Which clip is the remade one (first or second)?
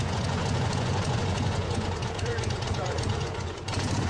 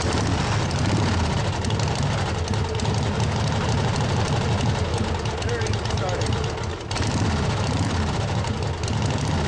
first